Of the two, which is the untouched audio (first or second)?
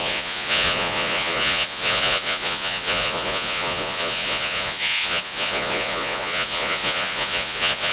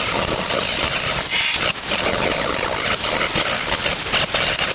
second